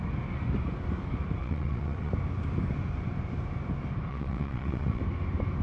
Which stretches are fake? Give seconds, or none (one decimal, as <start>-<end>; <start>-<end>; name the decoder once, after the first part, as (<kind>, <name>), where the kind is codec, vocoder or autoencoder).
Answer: 1.4-2.1 (vocoder, WaveNeXt); 4.1-5.0